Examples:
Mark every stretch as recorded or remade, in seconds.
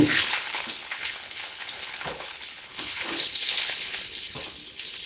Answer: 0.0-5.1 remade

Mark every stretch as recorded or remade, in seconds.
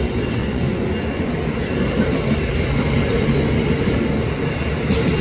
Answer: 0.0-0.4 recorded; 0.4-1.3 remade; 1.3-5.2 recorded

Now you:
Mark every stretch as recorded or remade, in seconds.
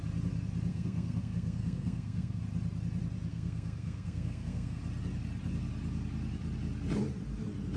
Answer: 0.0-0.7 recorded; 0.7-2.4 remade; 2.4-3.3 recorded; 3.3-4.8 remade; 4.8-7.8 recorded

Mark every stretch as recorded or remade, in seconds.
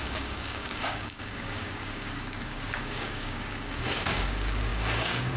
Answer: 0.0-5.4 remade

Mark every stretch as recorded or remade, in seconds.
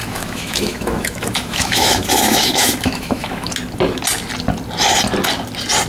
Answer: 0.0-3.5 remade; 3.5-5.9 recorded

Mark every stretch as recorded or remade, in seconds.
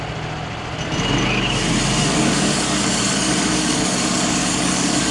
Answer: 0.0-2.1 recorded; 2.1-5.1 remade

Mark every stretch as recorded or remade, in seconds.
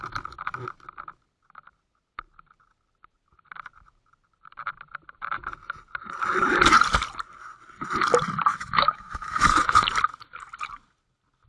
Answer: 0.0-8.5 recorded; 8.5-9.8 remade; 9.8-11.5 recorded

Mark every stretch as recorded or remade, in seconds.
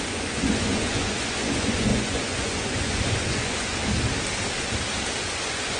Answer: 0.0-3.8 remade; 3.8-5.2 recorded; 5.2-5.8 remade